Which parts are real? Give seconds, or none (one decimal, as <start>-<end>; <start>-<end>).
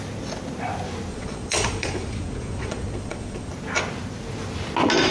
0.0-1.1; 3.5-5.1